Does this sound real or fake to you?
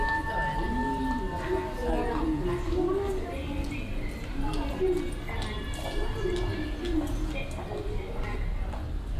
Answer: real